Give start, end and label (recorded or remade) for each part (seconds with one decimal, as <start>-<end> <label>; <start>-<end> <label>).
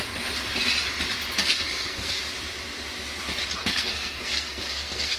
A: 0.0-1.4 recorded; 1.4-2.2 remade; 2.2-3.6 recorded; 3.6-5.2 remade